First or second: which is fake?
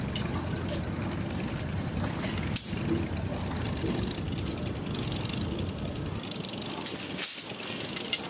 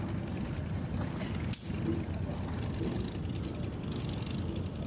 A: first